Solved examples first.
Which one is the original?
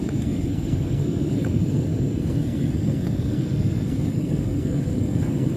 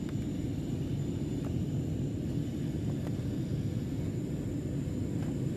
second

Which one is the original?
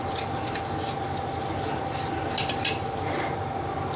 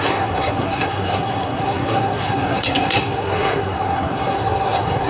first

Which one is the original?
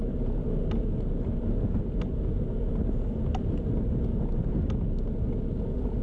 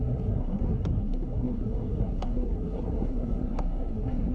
first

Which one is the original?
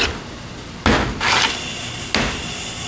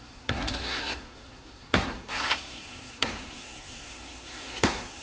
first